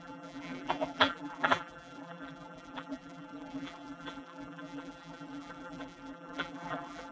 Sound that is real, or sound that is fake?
fake